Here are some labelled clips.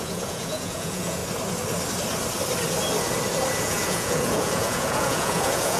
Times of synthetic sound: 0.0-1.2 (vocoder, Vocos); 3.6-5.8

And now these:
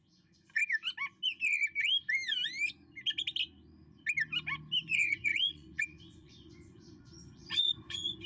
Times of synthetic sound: 0.0-0.6 (vocoder, Vocos); 4.8-8.3

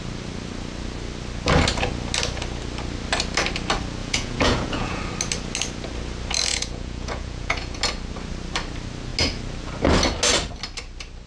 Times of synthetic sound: 4.0-5.0 (vocoder, Vocos); 6.5-7.8

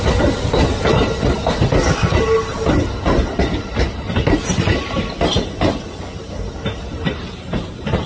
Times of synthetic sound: none

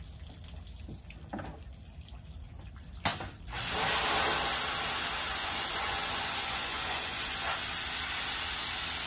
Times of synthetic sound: 5.3-7.7 (vocoder, Vocos)